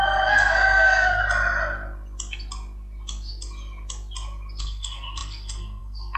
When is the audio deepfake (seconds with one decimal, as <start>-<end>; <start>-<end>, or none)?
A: 0.0-1.2; 4.6-6.2